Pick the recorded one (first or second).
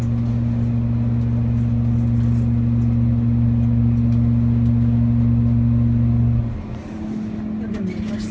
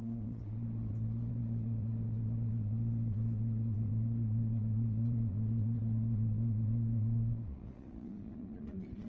first